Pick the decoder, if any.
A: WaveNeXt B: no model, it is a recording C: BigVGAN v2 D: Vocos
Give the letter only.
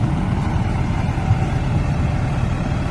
B